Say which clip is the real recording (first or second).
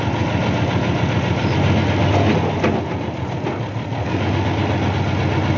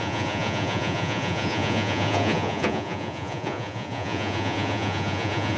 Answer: first